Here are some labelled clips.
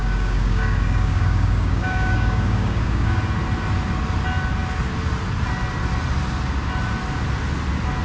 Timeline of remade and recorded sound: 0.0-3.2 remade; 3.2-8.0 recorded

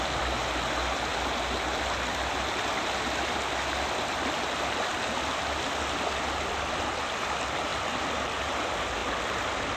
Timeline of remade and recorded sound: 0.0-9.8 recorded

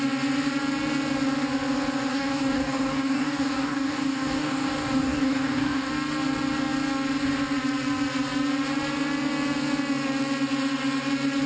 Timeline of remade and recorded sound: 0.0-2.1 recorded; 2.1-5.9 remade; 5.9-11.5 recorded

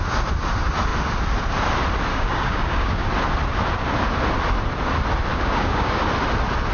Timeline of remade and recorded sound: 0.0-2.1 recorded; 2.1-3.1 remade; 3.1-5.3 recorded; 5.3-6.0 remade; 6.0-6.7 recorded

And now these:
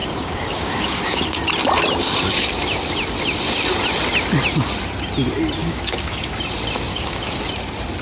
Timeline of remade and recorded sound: 0.0-1.4 remade; 1.4-5.6 recorded; 5.6-6.3 remade; 6.3-6.9 recorded; 6.9-7.4 remade; 7.4-8.0 recorded

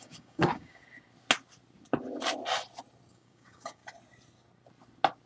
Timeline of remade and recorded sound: 0.0-0.8 remade; 0.8-3.1 recorded; 3.1-3.8 remade; 3.8-5.3 recorded

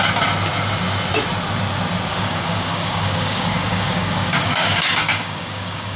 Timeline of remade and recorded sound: 0.0-2.1 recorded; 2.1-6.0 remade